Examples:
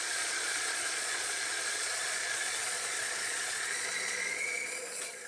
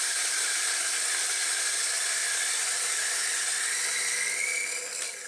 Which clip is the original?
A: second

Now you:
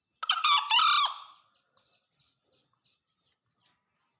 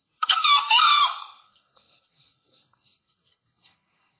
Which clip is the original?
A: first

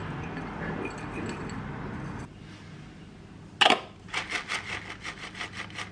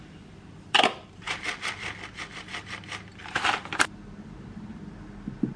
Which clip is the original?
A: first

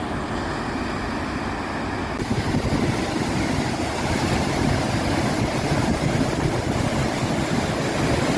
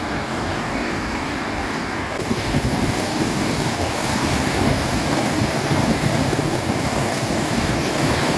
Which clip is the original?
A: first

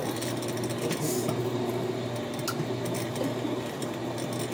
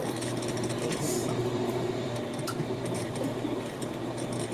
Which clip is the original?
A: first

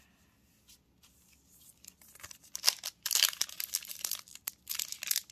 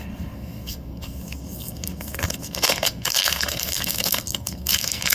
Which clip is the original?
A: first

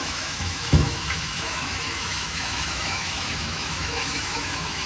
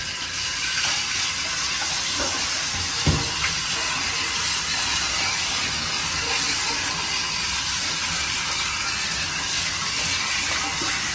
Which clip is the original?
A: second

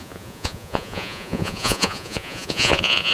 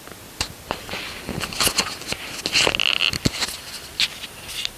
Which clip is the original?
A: second